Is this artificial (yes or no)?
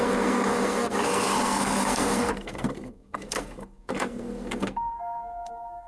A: yes